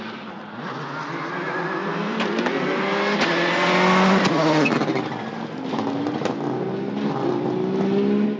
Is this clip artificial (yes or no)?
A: no